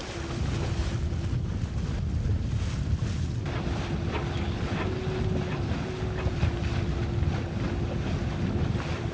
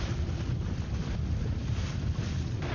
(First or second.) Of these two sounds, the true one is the first